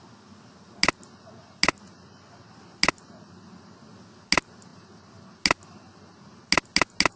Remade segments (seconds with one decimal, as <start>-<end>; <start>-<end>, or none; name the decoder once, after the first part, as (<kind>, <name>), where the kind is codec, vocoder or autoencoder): none